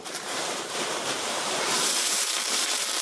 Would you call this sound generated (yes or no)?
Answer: yes